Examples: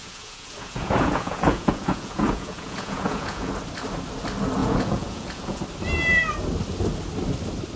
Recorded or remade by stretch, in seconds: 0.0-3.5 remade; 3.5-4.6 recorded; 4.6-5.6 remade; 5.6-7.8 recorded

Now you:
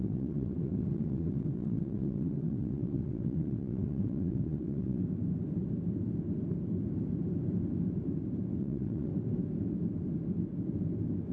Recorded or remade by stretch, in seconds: 0.0-5.0 remade; 5.0-8.6 recorded; 8.6-9.1 remade; 9.1-11.3 recorded

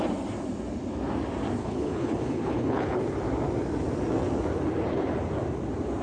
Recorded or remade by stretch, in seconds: 0.0-1.6 recorded; 1.6-3.0 remade; 3.0-6.0 recorded

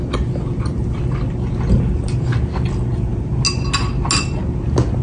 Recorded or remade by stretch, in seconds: 0.0-5.0 recorded

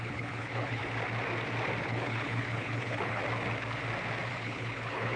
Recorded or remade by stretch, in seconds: 0.0-0.8 remade; 0.8-1.8 recorded; 1.8-3.2 remade; 3.2-4.3 recorded; 4.3-5.2 remade

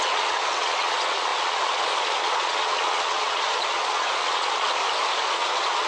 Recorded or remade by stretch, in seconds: 0.0-4.8 remade; 4.8-5.3 recorded; 5.3-5.9 remade